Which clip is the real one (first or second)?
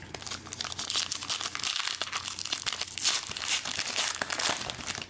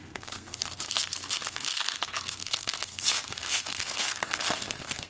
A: first